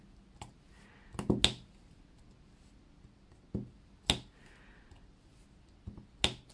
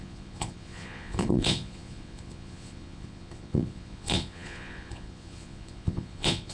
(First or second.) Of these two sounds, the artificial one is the second